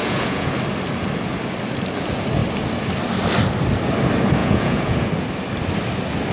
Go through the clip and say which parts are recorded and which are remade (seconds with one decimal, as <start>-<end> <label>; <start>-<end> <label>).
0.0-0.5 remade; 0.5-4.4 recorded; 4.4-5.1 remade; 5.1-6.3 recorded